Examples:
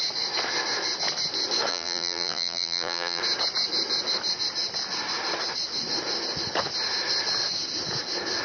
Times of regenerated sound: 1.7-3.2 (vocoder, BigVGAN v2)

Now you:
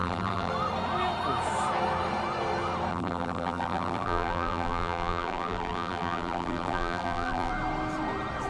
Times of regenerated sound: 0.0-0.5 (vocoder, BigVGAN v2); 2.9-7.5

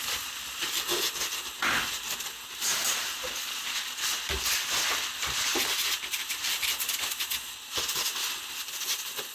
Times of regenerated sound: 2.7-3.2 (vocoder, BigVGAN v2)

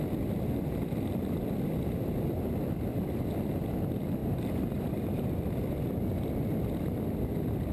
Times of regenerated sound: 4.2-5.3 (vocoder, BigVGAN v2)

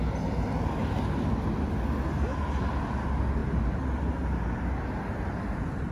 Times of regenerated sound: none

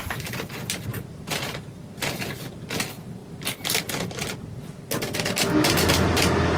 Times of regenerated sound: 0.9-2.6 (vocoder, BigVGAN v2); 3.2-3.8

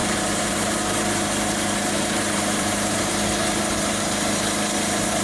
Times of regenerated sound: 0.0-3.1 (vocoder, BigVGAN v2)